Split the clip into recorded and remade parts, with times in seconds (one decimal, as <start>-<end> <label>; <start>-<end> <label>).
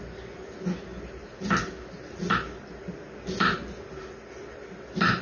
0.0-5.2 recorded